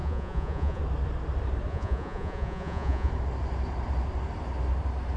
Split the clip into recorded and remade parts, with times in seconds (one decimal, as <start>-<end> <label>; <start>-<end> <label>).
0.0-0.8 remade; 0.8-1.7 recorded; 1.7-3.1 remade; 3.1-5.2 recorded